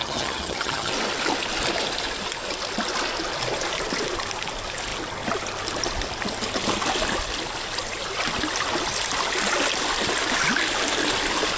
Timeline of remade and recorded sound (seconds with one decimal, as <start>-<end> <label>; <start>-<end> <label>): 0.0-0.9 remade; 0.9-11.6 recorded